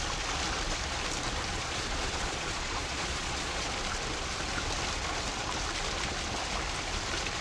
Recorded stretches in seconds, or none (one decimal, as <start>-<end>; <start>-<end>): 0.0-1.5; 3.7-7.4